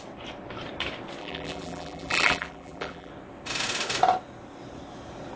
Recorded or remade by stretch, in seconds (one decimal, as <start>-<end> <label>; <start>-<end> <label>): 0.0-1.2 recorded; 1.2-3.1 remade; 3.1-5.4 recorded